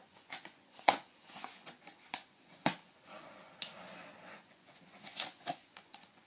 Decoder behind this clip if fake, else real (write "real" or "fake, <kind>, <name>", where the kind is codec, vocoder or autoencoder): fake, vocoder, Vocos